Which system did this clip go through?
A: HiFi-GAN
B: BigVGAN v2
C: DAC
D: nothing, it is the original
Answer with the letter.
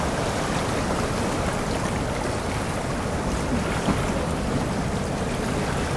D